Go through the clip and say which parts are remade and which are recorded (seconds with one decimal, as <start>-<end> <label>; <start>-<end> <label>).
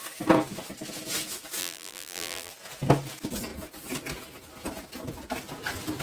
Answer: 0.0-1.6 recorded; 1.6-2.5 remade; 2.5-6.0 recorded